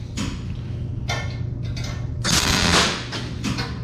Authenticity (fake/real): real